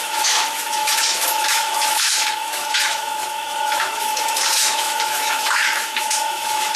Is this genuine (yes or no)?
no